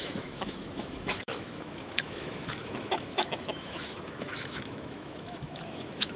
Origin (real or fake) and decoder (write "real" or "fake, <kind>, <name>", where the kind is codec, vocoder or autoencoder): fake, autoencoder, DAC-VAE